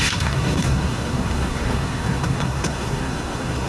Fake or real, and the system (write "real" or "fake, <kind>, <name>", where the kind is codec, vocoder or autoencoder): fake, codec, SNAC